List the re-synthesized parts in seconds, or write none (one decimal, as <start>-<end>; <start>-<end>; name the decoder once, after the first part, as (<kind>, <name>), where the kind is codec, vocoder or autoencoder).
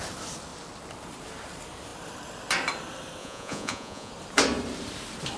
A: 3.2-4.1 (vocoder, Vocos)